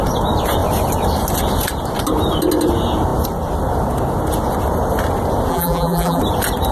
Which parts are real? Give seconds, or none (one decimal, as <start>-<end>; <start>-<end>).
0.0-5.5; 6.2-6.7